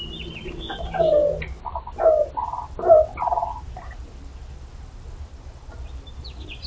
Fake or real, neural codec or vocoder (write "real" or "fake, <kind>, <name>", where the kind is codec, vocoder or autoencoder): real